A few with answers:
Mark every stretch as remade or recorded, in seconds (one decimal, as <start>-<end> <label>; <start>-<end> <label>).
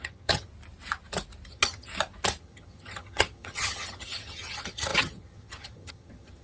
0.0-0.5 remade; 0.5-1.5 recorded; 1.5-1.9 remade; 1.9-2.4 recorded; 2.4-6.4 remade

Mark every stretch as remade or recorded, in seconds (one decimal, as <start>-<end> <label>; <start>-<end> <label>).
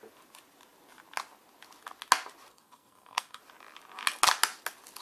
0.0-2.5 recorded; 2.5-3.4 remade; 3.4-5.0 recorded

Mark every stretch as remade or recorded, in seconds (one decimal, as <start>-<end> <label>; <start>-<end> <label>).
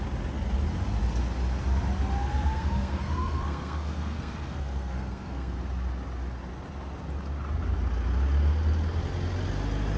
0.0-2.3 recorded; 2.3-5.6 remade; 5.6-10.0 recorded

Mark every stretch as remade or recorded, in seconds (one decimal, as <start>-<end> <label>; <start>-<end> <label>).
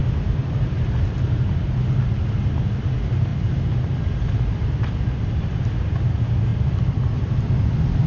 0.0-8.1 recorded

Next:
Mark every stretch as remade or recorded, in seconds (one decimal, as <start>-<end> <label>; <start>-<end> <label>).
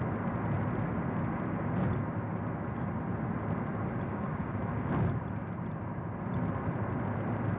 0.0-4.1 recorded; 4.1-4.6 remade; 4.6-7.6 recorded